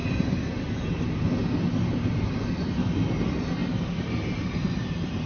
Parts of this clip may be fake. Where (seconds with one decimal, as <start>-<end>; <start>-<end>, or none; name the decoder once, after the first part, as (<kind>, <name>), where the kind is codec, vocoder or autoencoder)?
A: none